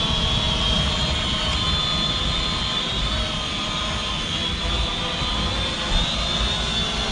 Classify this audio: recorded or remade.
recorded